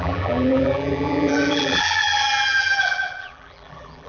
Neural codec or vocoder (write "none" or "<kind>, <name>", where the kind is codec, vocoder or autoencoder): vocoder, BigVGAN v2